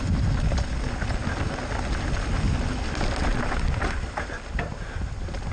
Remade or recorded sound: recorded